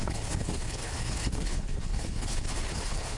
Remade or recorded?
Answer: remade